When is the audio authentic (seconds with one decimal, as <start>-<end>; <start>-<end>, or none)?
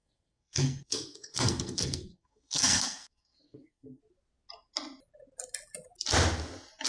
4.0-6.9